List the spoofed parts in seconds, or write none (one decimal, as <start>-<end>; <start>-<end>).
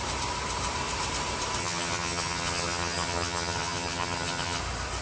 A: 1.6-4.6